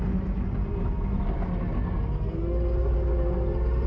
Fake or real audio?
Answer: real